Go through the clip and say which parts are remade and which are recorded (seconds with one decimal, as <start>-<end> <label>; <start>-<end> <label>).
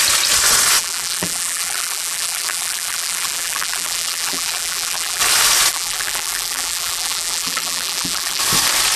0.0-0.8 recorded; 0.8-5.2 remade; 5.2-5.7 recorded; 5.7-8.4 remade; 8.4-9.0 recorded